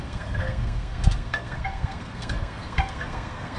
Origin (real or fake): fake